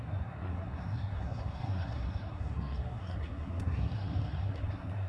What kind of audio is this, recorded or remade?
remade